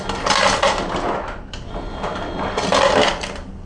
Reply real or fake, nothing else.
real